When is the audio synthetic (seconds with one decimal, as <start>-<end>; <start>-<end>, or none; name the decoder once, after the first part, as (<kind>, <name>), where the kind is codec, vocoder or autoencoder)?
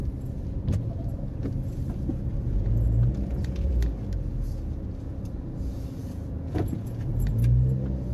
2.1-3.7 (vocoder, Vocos); 6.0-7.0